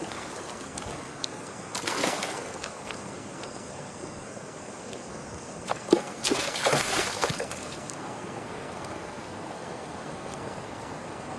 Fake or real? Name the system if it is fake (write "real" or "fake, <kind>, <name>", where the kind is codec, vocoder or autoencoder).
fake, codec, SNAC